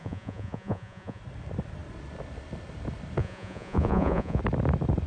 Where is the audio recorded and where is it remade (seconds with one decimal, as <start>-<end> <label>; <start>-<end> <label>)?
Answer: 0.0-1.2 remade; 1.2-3.2 recorded; 3.2-4.4 remade; 4.4-5.1 recorded